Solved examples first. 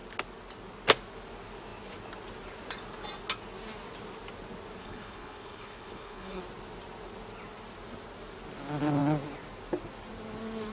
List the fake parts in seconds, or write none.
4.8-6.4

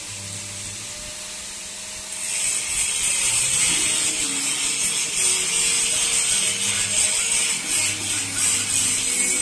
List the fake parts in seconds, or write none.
none